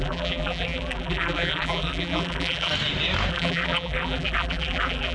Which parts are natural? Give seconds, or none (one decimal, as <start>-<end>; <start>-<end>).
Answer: 2.7-3.3